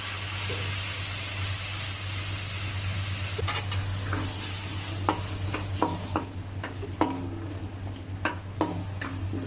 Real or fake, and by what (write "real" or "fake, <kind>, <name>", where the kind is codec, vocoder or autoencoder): real